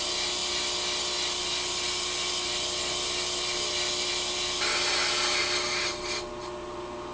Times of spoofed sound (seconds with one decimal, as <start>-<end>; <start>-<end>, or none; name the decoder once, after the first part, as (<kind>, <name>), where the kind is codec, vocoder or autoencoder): none